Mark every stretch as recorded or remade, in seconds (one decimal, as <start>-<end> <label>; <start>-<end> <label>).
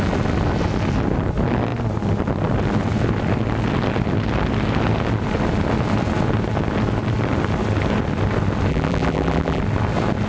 0.0-8.7 recorded; 8.7-9.6 remade; 9.6-10.3 recorded